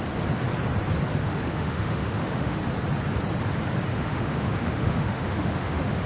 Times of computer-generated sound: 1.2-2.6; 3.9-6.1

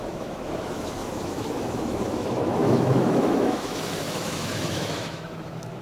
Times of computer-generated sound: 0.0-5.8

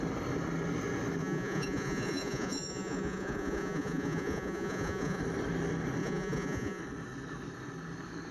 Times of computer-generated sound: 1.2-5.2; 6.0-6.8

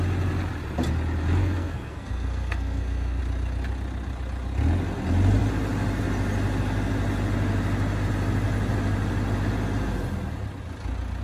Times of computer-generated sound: 1.4-3.2

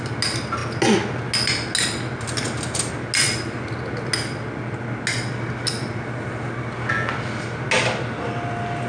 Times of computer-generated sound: none

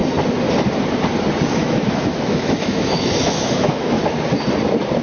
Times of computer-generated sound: 1.5-4.0

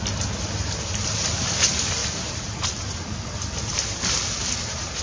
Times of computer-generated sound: 0.0-5.0